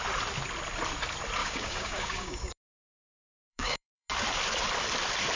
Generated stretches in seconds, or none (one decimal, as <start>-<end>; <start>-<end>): 1.4-4.1

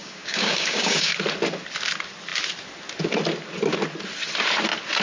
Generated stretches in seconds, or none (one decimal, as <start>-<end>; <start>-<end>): 0.0-1.1

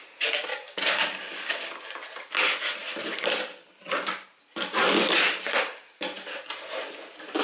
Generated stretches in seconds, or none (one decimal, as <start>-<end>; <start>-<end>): 0.5-1.8

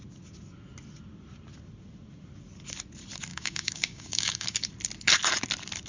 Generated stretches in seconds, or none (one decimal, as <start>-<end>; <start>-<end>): 3.3-4.7

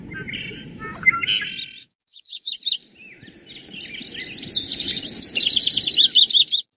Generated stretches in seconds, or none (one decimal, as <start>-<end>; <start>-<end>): 1.8-2.5